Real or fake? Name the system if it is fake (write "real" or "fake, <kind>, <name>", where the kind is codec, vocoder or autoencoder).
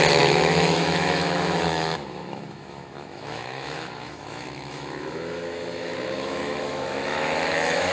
fake, autoencoder, DAC-VAE